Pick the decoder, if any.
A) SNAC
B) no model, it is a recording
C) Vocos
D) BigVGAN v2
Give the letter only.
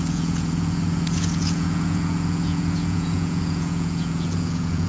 C